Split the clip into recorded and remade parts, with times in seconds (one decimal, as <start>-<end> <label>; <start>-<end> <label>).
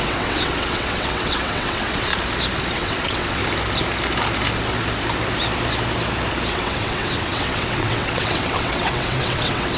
0.0-2.1 remade; 2.1-2.7 recorded; 2.7-3.4 remade; 3.4-6.5 recorded; 6.5-9.8 remade